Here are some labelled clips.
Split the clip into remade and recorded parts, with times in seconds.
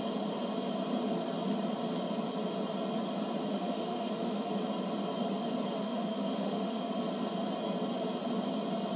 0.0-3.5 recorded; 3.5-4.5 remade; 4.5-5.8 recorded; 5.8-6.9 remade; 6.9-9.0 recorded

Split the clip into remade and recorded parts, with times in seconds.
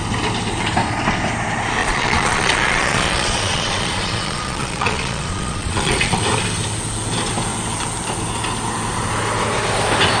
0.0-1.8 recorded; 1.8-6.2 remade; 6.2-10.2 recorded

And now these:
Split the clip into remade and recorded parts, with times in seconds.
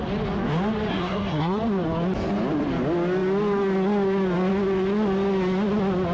0.0-0.9 recorded; 0.9-1.6 remade; 1.6-6.1 recorded